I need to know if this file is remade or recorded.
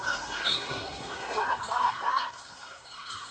remade